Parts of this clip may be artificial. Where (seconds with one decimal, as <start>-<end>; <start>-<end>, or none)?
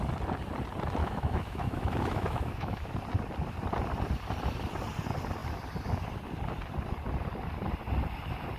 1.0-2.9